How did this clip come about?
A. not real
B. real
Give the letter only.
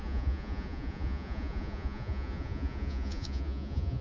A